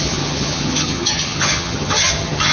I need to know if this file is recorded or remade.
remade